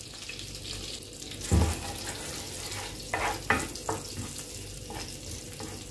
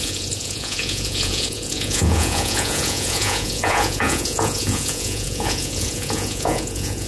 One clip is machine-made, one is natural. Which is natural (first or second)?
first